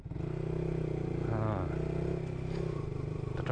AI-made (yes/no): no